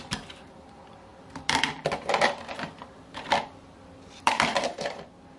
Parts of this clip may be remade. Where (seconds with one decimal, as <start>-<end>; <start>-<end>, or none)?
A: 0.0-5.4